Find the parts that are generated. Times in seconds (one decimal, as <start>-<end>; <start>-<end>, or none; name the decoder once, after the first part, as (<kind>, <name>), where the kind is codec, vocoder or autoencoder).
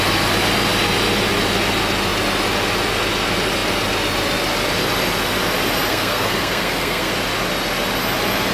5.9-7.1 (codec, SNAC)